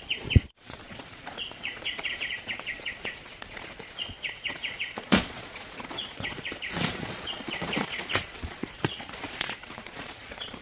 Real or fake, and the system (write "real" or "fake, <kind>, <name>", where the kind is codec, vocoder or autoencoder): fake, vocoder, Vocos